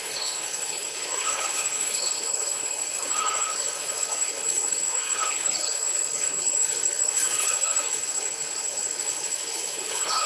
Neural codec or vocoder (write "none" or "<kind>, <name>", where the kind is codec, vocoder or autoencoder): codec, HILCodec